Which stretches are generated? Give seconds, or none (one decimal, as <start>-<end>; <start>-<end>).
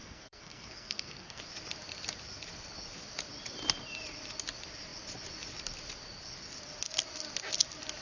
0.0-1.4